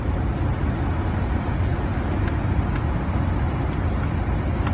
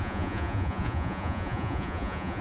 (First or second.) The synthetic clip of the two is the second